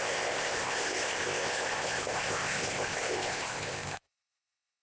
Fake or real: fake